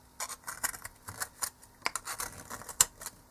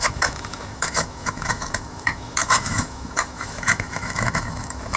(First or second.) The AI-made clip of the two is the second